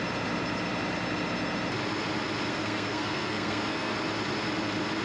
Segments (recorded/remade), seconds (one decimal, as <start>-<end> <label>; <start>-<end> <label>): 0.0-2.5 recorded; 2.5-3.9 remade; 3.9-5.0 recorded